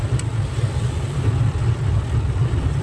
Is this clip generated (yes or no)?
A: no